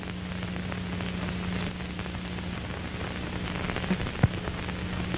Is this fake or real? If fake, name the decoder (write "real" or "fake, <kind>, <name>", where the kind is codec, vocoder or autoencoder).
real